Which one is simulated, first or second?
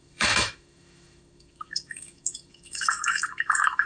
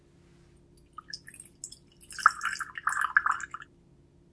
first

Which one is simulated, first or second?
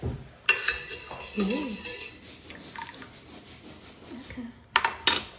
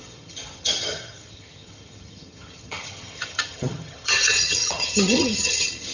second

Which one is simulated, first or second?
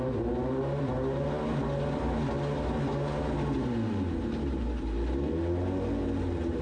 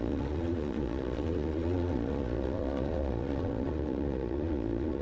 second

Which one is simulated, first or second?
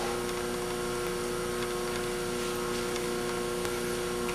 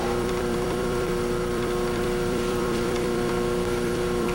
second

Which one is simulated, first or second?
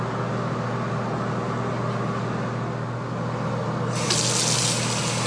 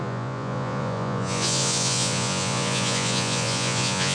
second